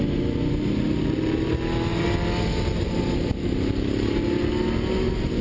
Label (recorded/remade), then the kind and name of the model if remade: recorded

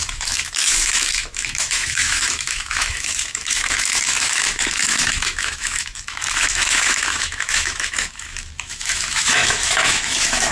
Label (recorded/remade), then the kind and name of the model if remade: remade, autoencoder, DAC-VAE